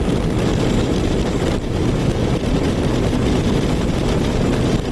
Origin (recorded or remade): recorded